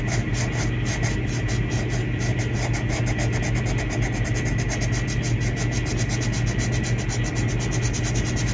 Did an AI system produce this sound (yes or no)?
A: no